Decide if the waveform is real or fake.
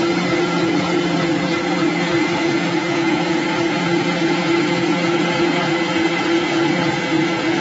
fake